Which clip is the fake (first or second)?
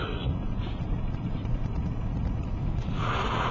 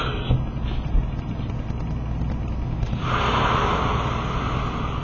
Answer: first